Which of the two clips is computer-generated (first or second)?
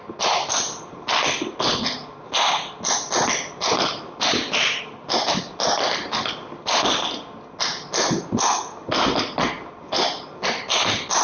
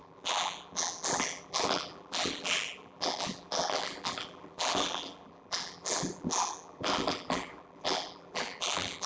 second